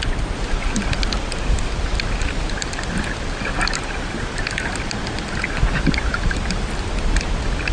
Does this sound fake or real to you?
real